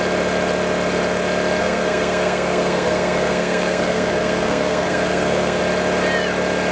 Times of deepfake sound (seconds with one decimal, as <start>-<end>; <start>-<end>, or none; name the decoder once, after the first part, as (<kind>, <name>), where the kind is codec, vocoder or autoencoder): 1.6-5.6 (codec, SNAC)